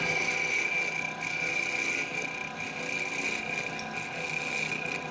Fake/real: real